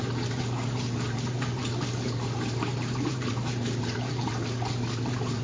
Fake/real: fake